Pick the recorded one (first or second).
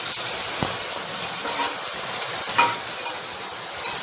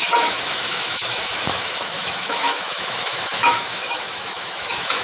first